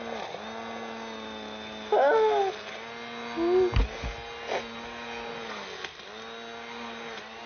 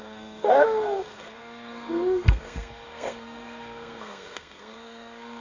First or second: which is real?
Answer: first